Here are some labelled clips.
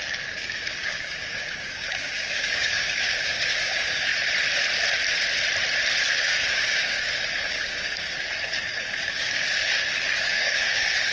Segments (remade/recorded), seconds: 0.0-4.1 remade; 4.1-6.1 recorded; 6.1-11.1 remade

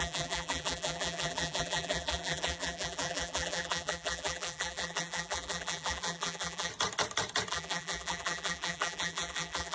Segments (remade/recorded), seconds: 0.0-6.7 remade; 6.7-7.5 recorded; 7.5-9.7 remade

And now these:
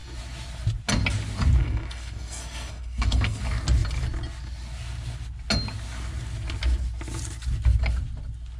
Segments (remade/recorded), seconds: 0.0-1.6 recorded; 1.6-3.4 remade; 3.4-8.6 recorded

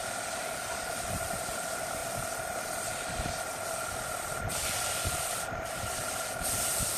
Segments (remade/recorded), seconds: 0.0-7.0 recorded

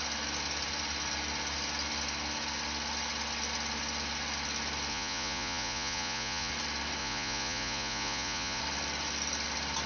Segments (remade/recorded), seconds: 0.0-4.9 recorded; 4.9-6.5 remade; 6.5-7.0 recorded; 7.0-8.6 remade; 8.6-9.9 recorded

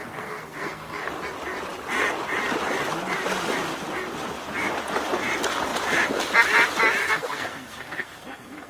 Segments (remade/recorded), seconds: 0.0-1.1 remade; 1.1-7.0 recorded; 7.0-8.7 remade

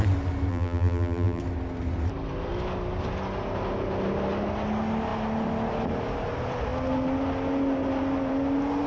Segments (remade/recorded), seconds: 0.0-0.5 recorded; 0.5-1.4 remade; 1.4-8.9 recorded